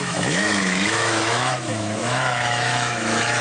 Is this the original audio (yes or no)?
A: no